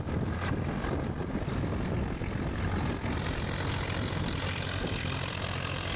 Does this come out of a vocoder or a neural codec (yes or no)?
no